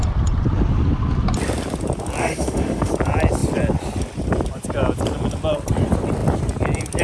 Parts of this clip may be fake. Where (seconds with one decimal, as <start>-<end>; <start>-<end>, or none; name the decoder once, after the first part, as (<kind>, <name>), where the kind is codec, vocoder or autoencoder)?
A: 2.2-2.9 (autoencoder, DAC-VAE)